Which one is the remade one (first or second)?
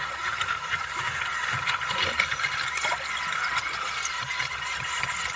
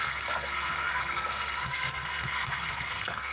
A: second